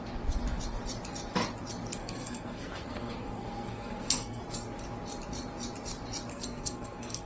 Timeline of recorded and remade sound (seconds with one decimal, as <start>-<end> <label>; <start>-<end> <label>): 0.0-2.0 recorded; 2.0-4.4 remade; 4.4-6.3 recorded; 6.3-7.3 remade